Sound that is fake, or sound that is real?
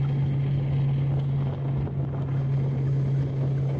real